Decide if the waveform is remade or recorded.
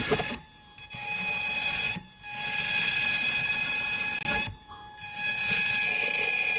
recorded